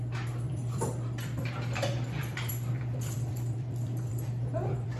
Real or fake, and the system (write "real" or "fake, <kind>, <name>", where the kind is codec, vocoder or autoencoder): fake, vocoder, BigVGAN v2